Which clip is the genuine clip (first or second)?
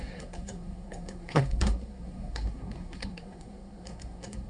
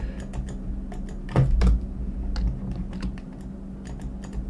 second